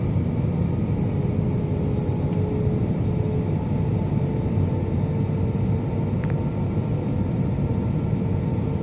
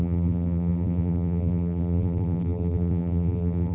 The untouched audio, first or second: first